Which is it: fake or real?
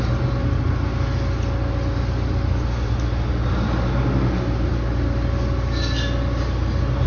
real